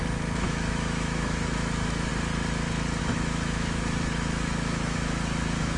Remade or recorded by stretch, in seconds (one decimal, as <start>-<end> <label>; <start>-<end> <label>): 0.0-2.1 remade; 2.1-3.0 recorded; 3.0-5.8 remade